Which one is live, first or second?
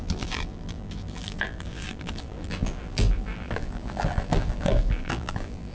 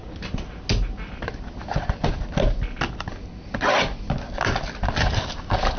second